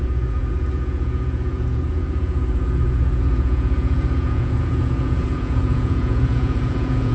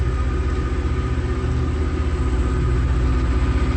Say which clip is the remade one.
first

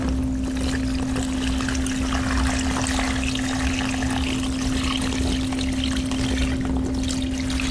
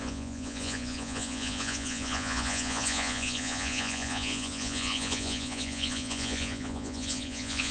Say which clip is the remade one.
second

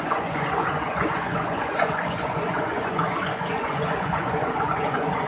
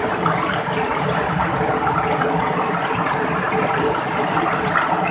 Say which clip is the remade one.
first